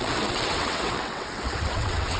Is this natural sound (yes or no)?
no